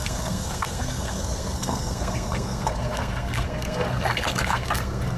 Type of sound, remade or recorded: remade